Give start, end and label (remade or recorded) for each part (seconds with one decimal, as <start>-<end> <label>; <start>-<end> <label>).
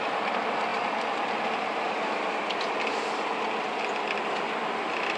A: 0.0-5.2 recorded